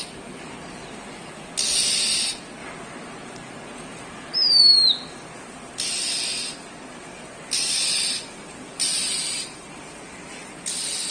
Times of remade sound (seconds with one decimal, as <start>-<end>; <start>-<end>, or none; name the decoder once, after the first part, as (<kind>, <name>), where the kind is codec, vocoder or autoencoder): none